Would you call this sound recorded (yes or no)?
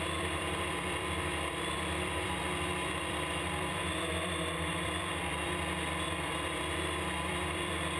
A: no